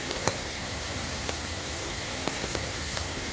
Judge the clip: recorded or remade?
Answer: remade